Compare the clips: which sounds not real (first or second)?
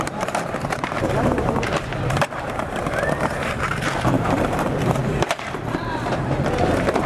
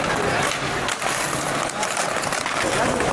first